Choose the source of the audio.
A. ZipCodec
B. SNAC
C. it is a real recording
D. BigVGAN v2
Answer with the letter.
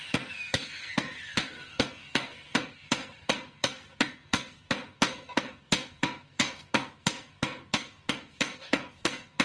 B